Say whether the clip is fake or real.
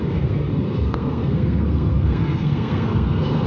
fake